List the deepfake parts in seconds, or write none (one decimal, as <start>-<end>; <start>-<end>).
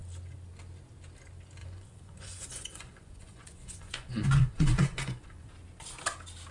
1.6-5.5